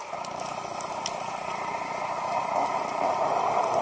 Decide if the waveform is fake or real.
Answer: real